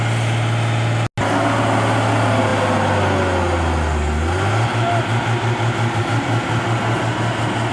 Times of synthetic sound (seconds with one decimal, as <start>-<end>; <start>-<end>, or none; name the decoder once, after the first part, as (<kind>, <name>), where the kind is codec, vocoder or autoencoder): none